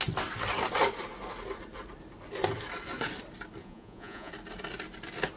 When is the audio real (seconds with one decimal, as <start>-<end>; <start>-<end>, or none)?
0.0-3.6; 4.3-5.4